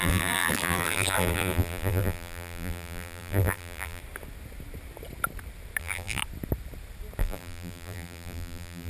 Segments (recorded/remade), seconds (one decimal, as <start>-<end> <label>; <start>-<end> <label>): 0.0-4.0 remade; 4.0-5.8 recorded; 5.8-6.2 remade; 6.2-7.2 recorded; 7.2-8.9 remade